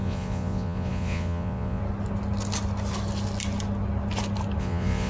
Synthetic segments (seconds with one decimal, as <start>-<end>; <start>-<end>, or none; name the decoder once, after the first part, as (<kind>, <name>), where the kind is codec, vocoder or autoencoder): 0.0-1.8 (vocoder, Vocos); 4.6-5.1